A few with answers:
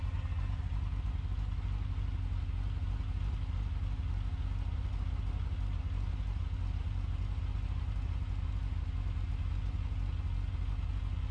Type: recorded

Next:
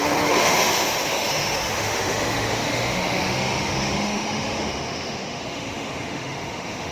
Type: remade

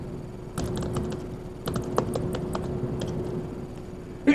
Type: recorded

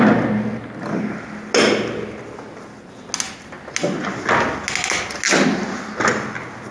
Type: recorded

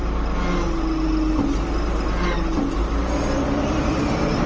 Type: recorded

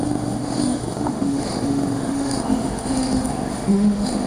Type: remade